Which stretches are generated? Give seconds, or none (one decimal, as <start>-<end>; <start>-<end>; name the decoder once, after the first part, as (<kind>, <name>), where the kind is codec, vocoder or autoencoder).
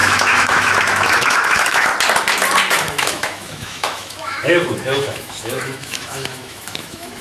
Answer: 0.0-1.9 (autoencoder, DAC-VAE); 2.7-7.2